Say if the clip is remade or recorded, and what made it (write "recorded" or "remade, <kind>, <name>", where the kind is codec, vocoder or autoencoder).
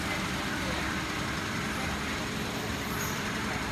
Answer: remade, vocoder, BigVGAN v2